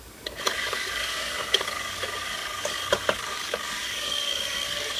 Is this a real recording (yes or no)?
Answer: no